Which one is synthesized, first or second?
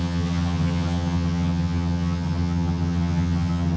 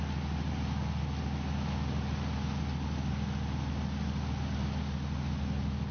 first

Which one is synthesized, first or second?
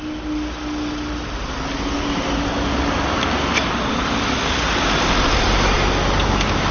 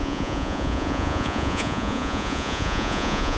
second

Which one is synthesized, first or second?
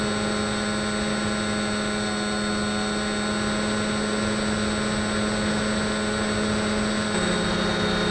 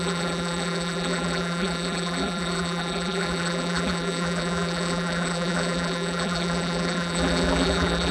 second